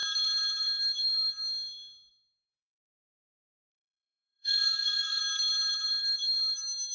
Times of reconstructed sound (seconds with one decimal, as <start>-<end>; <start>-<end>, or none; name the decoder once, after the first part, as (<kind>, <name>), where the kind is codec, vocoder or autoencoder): 3.7-5.2 (codec, SNAC)

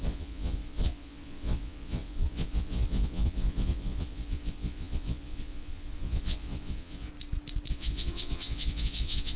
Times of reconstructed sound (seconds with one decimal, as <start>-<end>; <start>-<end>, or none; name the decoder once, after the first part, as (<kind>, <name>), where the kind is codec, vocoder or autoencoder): 0.0-7.1 (vocoder, Vocos); 7.7-9.4